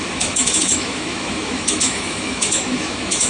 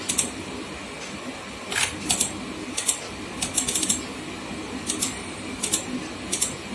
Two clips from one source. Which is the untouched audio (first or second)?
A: second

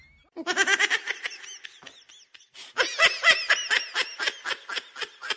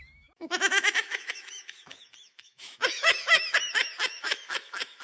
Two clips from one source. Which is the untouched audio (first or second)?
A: first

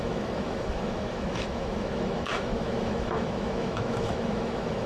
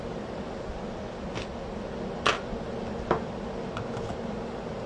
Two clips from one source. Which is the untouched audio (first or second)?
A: second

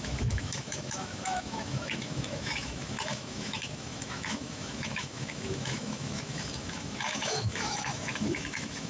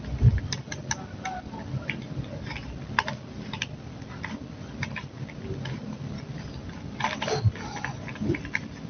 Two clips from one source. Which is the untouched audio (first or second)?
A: second